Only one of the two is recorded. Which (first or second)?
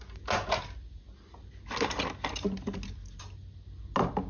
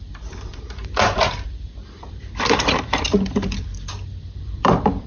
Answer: first